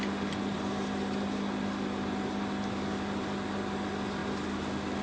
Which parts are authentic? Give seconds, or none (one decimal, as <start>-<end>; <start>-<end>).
0.0-5.0